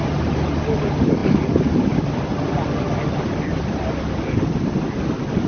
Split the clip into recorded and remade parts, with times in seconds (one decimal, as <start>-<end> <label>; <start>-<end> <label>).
0.0-5.5 recorded